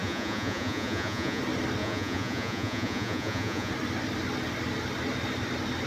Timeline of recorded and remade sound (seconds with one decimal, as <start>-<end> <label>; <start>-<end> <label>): 0.0-1.4 remade; 1.4-1.8 recorded; 1.8-3.7 remade; 3.7-5.9 recorded